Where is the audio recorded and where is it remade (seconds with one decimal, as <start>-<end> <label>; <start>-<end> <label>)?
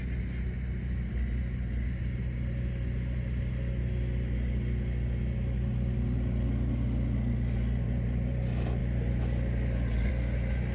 0.0-10.7 recorded